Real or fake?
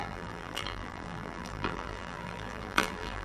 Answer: fake